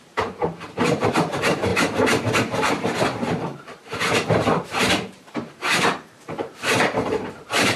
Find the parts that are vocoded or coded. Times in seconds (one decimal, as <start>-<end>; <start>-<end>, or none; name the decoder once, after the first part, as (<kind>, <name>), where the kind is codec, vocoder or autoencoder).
0.0-7.8 (vocoder, BigVGAN v2)